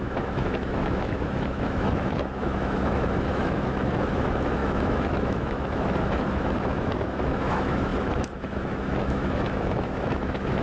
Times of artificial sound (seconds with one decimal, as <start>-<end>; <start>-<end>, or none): 0.0-10.6